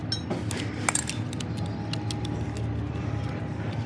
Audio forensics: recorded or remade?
recorded